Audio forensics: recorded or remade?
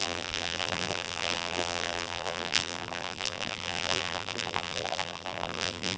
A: remade